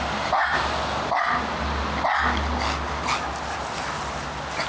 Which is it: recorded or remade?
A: recorded